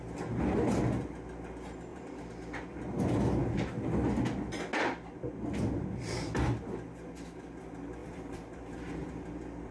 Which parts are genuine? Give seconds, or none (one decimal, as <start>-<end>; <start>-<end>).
0.0-1.9; 2.8-8.0